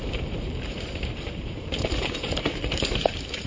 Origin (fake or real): fake